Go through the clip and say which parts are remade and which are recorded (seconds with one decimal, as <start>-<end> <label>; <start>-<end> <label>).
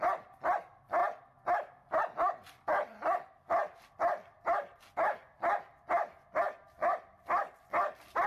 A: 0.0-1.0 remade; 1.0-4.9 recorded; 4.9-5.7 remade; 5.7-6.4 recorded; 6.4-8.3 remade